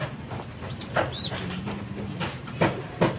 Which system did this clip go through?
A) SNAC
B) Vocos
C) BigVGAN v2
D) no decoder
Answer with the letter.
D